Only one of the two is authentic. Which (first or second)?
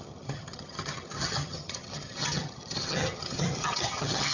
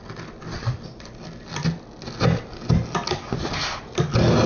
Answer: second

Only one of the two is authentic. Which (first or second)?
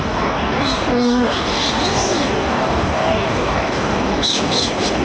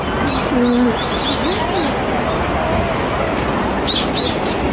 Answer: second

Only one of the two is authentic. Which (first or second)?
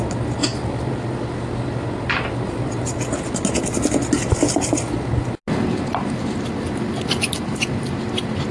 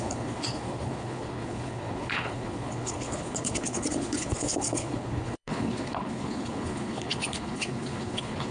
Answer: first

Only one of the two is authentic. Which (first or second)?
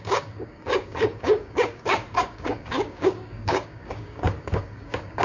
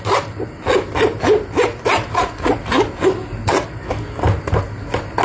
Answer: second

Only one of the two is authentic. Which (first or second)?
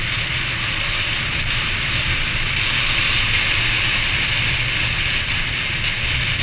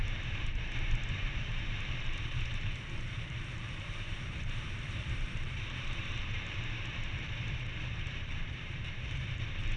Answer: first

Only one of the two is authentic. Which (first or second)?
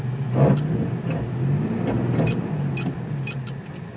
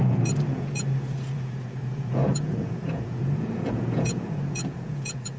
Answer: first